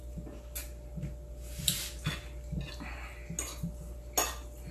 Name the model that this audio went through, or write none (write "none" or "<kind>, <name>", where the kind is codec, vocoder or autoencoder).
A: none